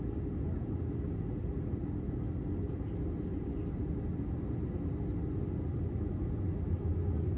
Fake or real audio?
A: real